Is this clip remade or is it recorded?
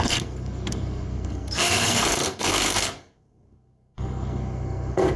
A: remade